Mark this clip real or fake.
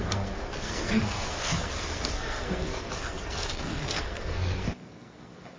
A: fake